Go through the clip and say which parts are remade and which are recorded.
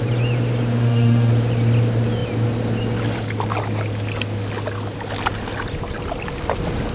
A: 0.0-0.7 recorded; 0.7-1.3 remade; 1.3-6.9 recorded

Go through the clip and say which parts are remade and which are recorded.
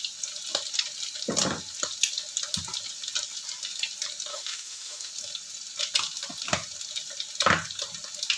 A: 0.0-4.3 recorded; 4.3-5.1 remade; 5.1-8.4 recorded